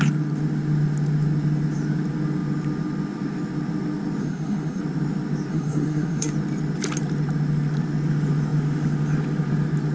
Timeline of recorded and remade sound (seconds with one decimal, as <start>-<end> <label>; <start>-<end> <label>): 0.0-4.2 recorded; 4.2-4.8 remade; 4.8-5.5 recorded; 5.5-6.3 remade; 6.3-9.9 recorded